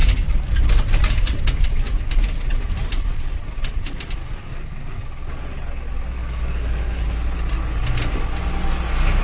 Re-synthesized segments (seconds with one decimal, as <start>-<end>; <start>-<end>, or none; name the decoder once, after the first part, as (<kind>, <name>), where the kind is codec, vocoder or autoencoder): 4.2-5.1 (codec, DAC); 6.2-7.0